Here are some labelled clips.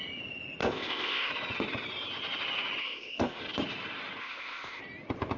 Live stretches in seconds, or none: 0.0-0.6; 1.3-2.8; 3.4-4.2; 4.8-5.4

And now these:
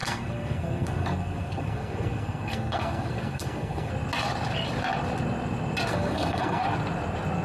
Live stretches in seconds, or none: 3.9-5.9; 6.6-7.4

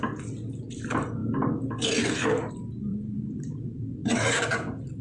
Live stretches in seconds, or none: 0.0-2.9; 3.6-4.0

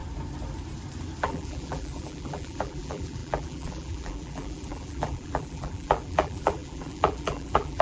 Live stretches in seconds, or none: 0.0-1.2

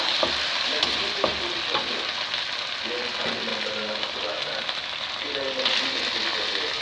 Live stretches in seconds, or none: 0.0-6.8